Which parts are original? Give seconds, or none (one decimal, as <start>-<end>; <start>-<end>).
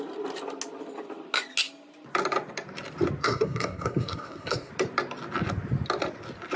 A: 0.0-3.2; 4.7-6.6